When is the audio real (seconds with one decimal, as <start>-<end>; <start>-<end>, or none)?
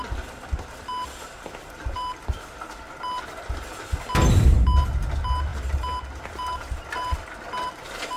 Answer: 0.0-8.2